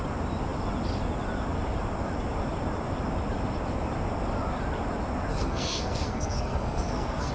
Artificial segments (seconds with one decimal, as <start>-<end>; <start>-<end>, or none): 5.3-7.3

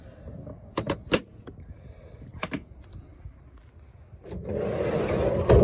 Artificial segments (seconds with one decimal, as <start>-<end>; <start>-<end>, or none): none

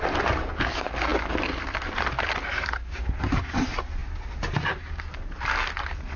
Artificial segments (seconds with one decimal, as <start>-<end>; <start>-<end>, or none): none

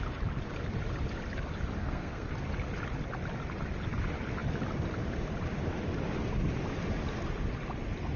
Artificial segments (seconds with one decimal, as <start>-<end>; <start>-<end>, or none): 1.8-2.3